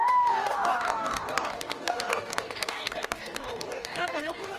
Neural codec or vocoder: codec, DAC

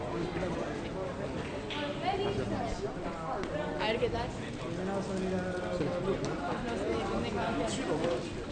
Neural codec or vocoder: none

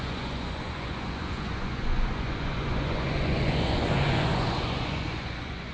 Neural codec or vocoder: vocoder, Vocos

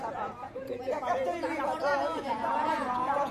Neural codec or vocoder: vocoder, Vocos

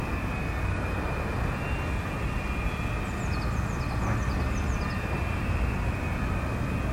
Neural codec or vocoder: none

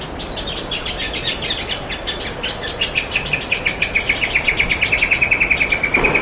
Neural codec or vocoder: none